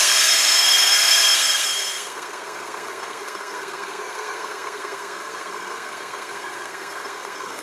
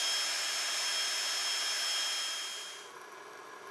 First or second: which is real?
second